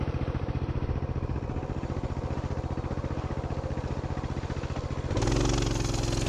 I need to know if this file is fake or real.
real